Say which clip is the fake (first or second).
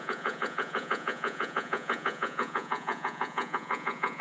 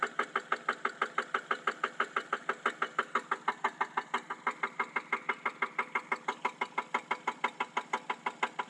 first